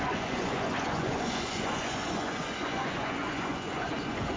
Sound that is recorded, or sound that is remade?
remade